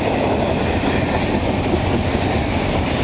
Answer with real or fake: real